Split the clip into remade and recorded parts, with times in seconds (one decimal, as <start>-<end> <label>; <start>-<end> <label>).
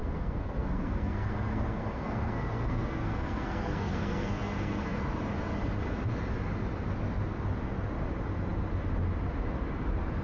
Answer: 0.0-5.0 remade; 5.0-10.2 recorded